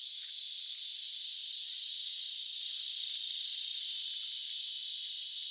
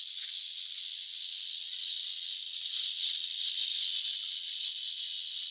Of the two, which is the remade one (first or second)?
second